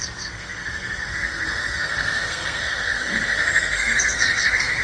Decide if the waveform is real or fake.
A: fake